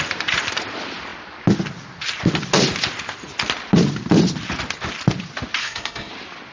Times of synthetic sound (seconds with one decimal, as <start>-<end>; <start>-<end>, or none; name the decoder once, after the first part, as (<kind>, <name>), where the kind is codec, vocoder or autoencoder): 5.6-6.1 (codec, SNAC)